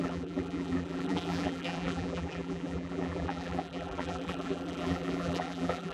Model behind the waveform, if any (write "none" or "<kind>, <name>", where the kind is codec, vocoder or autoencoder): vocoder, BigVGAN v2